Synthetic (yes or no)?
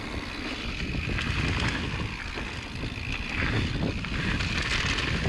no